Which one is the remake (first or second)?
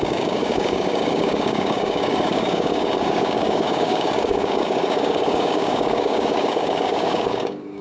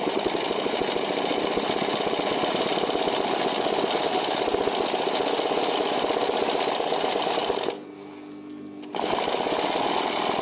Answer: first